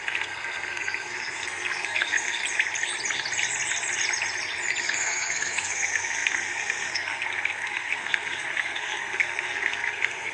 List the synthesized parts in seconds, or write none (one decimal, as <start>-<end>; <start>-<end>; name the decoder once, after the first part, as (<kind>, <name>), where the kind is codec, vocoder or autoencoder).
0.0-2.4 (codec, SNAC); 4.8-10.3